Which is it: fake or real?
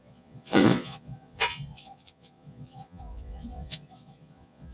fake